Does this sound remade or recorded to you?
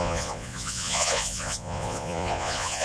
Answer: remade